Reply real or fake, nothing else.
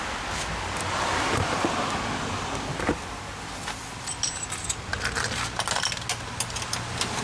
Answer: real